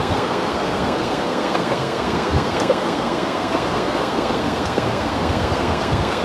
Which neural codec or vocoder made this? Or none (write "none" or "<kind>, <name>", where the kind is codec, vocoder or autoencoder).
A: codec, SNAC